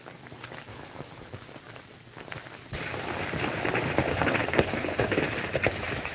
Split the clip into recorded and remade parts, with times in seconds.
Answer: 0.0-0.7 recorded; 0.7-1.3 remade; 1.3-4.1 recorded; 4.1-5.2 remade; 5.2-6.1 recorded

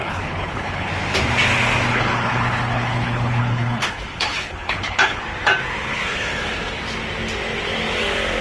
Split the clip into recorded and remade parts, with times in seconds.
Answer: 0.0-0.9 remade; 0.9-1.9 recorded; 1.9-5.2 remade; 5.2-5.9 recorded; 5.9-6.8 remade; 6.8-8.4 recorded

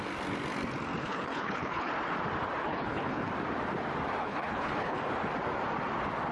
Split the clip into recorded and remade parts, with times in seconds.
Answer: 0.0-1.0 recorded; 1.0-1.9 remade; 1.9-2.6 recorded; 2.6-3.2 remade; 3.2-4.2 recorded; 4.2-5.0 remade; 5.0-6.3 recorded

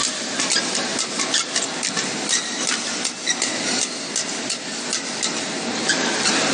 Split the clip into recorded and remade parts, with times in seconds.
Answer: 0.0-6.5 recorded

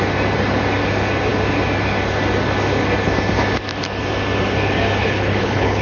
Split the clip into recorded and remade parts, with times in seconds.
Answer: 0.0-5.0 recorded; 5.0-5.8 remade

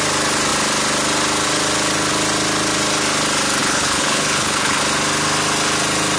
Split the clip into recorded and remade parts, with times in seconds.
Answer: 0.0-3.6 recorded; 3.6-4.8 remade; 4.8-6.2 recorded